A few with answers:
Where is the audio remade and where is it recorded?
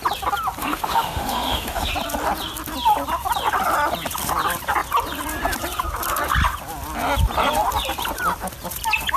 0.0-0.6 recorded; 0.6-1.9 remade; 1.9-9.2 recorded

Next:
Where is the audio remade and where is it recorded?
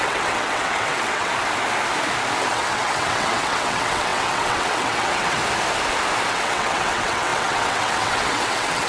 0.0-1.3 remade; 1.3-2.5 recorded; 2.5-5.4 remade; 5.4-6.3 recorded; 6.3-8.9 remade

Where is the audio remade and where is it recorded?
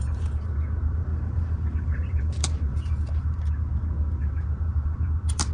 0.0-1.1 recorded; 1.1-3.4 remade; 3.4-4.7 recorded; 4.7-5.5 remade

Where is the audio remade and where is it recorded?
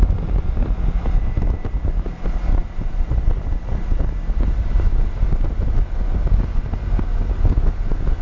0.0-8.2 recorded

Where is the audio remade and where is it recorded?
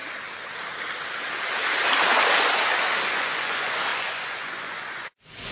0.0-3.1 recorded; 3.1-5.5 remade